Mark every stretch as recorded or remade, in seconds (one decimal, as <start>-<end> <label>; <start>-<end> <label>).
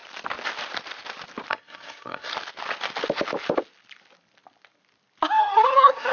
0.0-1.5 recorded; 1.5-2.3 remade; 2.3-5.4 recorded; 5.4-6.1 remade